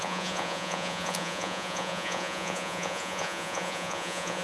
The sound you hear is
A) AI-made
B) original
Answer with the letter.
A